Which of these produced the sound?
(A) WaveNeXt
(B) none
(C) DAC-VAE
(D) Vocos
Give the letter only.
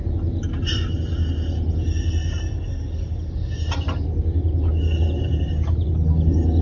B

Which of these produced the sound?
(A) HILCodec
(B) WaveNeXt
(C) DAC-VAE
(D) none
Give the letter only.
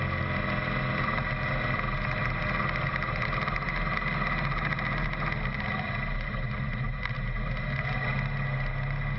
D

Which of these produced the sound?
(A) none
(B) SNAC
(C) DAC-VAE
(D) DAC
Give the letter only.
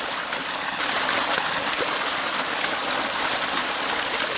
A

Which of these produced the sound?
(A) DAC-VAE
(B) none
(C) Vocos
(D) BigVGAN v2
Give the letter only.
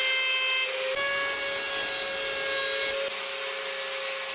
B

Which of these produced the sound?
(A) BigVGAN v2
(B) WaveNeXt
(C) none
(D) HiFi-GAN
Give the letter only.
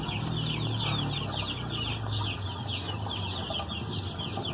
C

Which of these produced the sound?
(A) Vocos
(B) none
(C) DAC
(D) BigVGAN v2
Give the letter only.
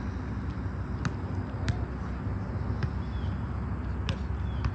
B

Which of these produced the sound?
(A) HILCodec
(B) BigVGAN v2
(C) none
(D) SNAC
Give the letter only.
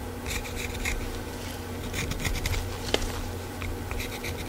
C